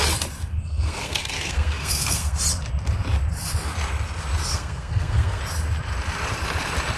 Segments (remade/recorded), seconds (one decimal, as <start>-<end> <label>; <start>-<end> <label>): 0.0-0.6 recorded; 0.6-2.4 remade; 2.4-4.5 recorded; 4.5-5.4 remade; 5.4-7.0 recorded